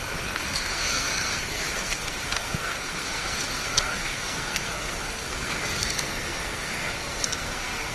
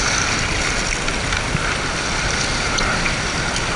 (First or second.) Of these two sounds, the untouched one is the second